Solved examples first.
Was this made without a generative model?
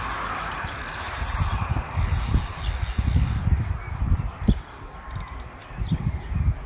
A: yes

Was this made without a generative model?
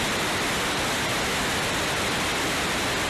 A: yes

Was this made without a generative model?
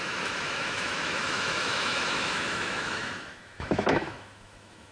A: no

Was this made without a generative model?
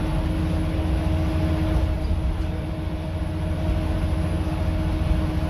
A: yes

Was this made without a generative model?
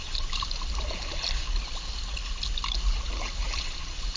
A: no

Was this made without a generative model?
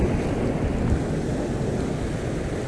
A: yes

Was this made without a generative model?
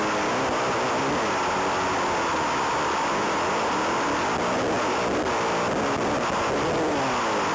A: yes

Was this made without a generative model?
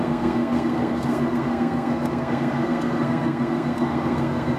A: no